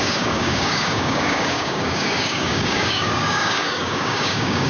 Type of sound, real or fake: fake